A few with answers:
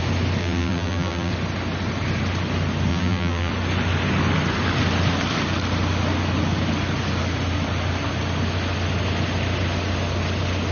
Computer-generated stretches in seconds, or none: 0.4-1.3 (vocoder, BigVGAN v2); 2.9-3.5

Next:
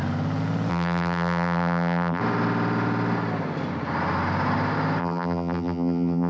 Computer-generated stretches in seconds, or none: 0.7-2.2 (vocoder, BigVGAN v2); 5.0-6.3

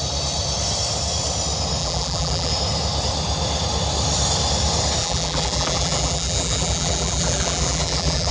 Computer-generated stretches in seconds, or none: 1.8-2.5 (vocoder, BigVGAN v2); 5.0-8.3

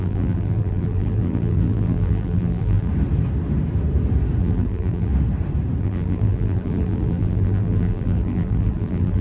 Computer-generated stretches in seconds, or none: 0.0-2.9 (vocoder, BigVGAN v2); 4.4-5.1; 5.8-9.2

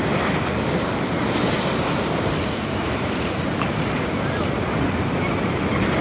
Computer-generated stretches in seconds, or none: 2.8-3.5 (vocoder, BigVGAN v2)

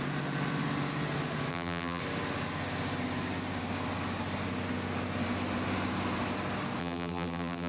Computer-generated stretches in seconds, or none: 1.5-2.0 (vocoder, BigVGAN v2); 6.8-7.7